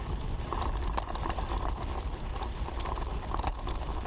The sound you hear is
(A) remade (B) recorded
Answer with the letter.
B